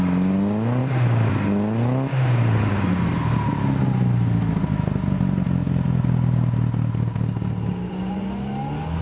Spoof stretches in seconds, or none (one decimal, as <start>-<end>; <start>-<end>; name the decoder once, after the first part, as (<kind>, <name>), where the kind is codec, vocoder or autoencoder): 0.8-1.3 (codec, DAC); 2.1-2.9